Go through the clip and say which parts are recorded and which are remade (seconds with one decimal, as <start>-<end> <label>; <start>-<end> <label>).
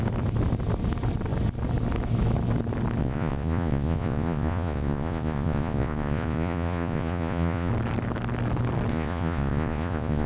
0.0-3.0 recorded; 3.0-7.7 remade; 7.7-8.9 recorded; 8.9-10.3 remade